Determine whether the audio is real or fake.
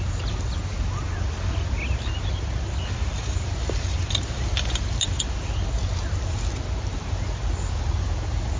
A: real